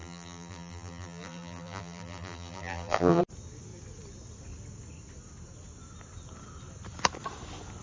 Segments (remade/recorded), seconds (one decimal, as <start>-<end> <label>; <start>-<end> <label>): 0.0-3.2 remade; 3.2-7.8 recorded